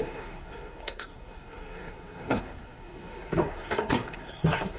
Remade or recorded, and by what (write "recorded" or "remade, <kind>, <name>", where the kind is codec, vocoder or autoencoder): remade, codec, SNAC